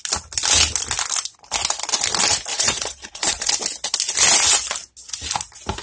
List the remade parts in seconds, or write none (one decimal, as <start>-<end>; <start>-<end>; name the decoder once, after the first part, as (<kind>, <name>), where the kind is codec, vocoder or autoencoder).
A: 2.5-3.5 (vocoder, Vocos)